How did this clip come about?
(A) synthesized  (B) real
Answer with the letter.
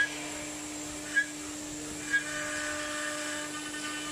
B